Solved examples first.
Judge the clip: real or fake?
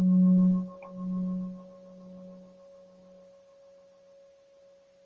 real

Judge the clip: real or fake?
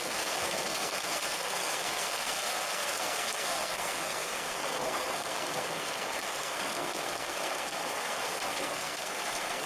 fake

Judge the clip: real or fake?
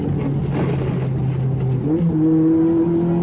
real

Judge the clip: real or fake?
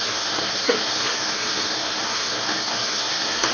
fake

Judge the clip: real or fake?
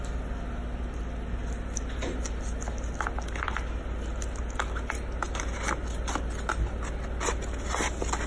real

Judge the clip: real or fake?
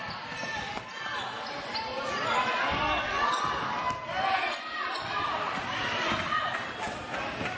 real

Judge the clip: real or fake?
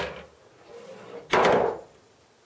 real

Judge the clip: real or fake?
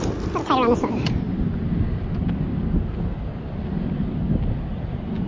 real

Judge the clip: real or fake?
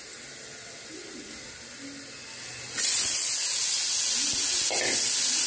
real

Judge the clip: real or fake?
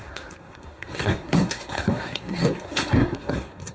fake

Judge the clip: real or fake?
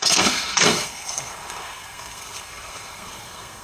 fake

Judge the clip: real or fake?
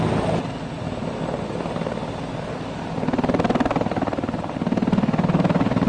real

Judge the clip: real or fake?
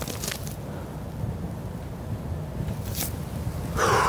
real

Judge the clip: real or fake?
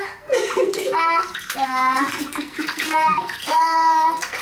fake